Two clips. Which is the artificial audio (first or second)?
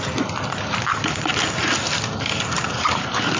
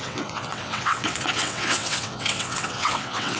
second